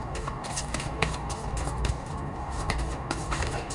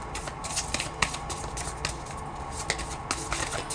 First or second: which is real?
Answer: second